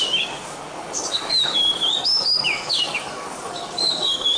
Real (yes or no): no